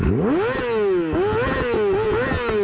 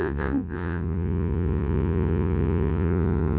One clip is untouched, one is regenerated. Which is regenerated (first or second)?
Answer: second